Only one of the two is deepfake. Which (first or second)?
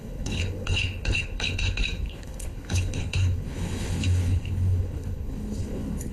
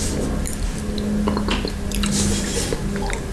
first